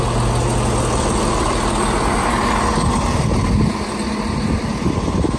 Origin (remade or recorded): recorded